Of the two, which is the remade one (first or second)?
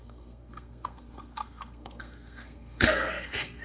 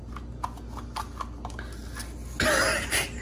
first